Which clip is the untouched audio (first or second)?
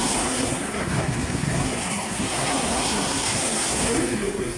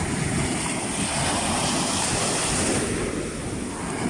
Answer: second